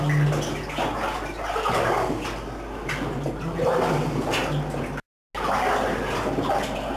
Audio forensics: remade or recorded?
recorded